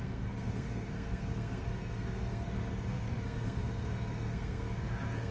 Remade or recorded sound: remade